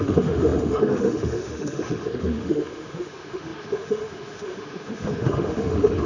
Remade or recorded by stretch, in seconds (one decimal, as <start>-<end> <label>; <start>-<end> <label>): 0.0-6.1 remade